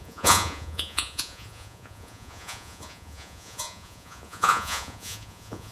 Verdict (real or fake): fake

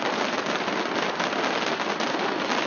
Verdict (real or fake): real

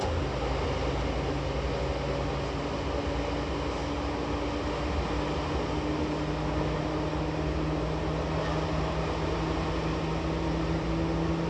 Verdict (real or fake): real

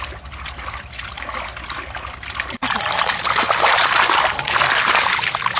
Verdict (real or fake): real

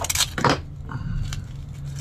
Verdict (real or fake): real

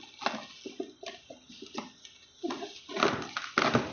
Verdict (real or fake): real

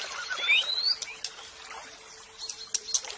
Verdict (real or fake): real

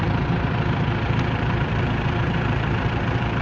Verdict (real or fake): fake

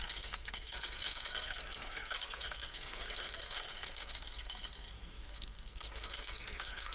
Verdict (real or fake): fake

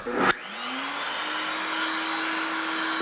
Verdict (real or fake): real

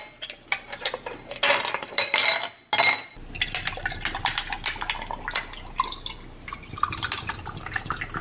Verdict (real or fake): real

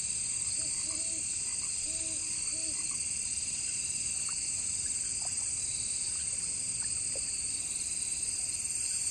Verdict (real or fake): real